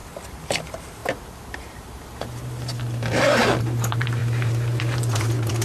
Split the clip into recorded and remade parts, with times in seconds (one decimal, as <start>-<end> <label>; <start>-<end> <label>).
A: 0.0-0.6 recorded; 0.6-5.6 remade